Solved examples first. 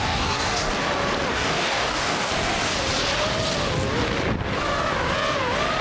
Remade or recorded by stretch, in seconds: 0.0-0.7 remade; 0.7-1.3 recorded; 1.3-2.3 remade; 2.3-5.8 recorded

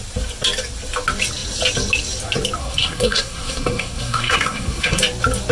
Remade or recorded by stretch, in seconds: 0.0-2.6 recorded; 2.6-5.0 remade; 5.0-5.5 recorded